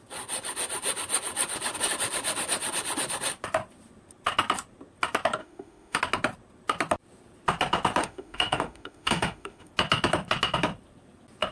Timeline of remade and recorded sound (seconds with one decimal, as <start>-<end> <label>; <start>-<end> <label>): 0.0-5.4 recorded; 5.4-6.0 remade; 6.0-8.0 recorded; 8.0-9.7 remade; 9.7-11.5 recorded